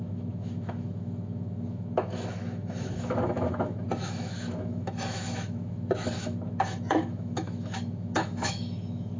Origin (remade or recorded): remade